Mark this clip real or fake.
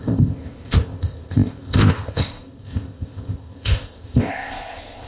fake